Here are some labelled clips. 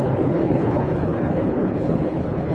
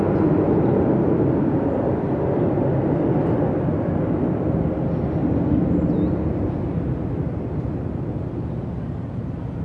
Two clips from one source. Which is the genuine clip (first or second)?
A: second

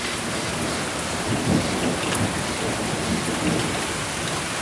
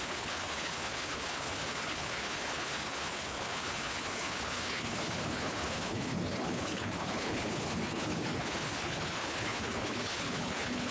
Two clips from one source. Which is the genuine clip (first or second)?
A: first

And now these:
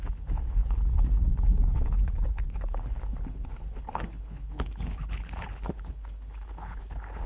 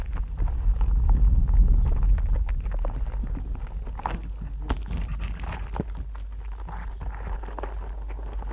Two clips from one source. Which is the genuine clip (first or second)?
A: second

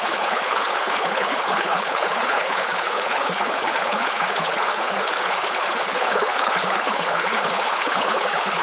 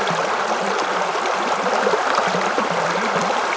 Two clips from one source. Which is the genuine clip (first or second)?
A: second